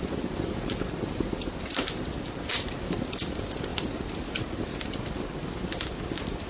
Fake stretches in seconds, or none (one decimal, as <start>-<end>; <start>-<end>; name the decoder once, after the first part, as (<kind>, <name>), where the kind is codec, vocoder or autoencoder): none